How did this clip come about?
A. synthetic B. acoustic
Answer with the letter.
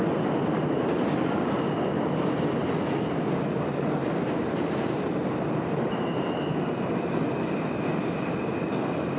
B